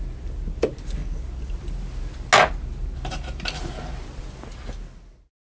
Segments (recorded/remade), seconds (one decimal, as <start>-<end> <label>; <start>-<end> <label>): 0.0-5.4 recorded